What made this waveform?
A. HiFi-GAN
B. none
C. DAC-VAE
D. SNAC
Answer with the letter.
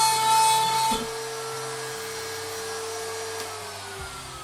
B